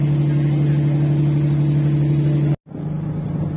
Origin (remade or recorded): recorded